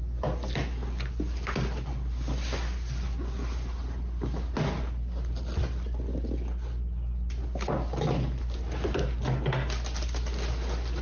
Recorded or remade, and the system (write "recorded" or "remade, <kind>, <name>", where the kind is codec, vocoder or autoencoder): recorded